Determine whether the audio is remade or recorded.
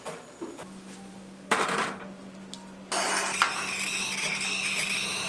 recorded